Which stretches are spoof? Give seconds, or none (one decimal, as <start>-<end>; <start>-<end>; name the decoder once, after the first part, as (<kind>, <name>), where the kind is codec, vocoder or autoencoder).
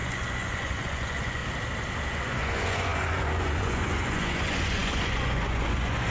0.0-1.4 (vocoder, Vocos); 2.1-6.1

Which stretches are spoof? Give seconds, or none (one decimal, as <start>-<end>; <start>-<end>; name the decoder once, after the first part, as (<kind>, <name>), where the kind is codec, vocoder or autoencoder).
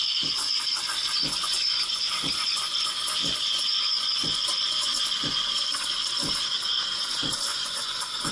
1.4-5.7 (vocoder, Vocos); 7.5-8.3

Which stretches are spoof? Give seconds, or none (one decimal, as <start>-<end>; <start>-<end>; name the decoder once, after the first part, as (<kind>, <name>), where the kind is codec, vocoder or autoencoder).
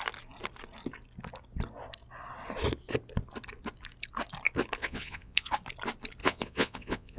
4.8-5.5 (vocoder, Vocos); 6.2-7.2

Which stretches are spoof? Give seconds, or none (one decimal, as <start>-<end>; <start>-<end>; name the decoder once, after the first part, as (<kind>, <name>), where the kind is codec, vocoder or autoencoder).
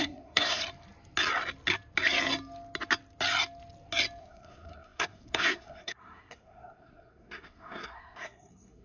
0.0-0.6 (codec, SNAC); 4.2-8.8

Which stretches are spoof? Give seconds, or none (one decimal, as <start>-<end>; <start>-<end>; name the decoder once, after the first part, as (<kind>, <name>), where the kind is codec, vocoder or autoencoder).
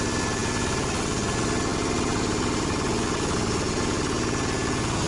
none